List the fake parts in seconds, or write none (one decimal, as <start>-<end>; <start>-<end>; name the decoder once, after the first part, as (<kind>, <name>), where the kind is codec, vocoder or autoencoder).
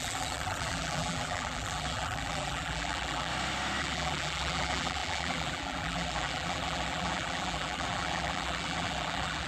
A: 0.0-3.3 (vocoder, BigVGAN v2); 3.8-9.5